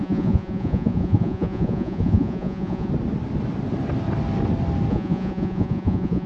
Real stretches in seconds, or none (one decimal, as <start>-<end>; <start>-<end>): 2.9-4.9